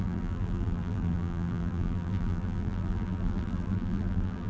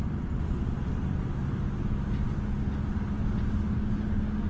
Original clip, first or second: second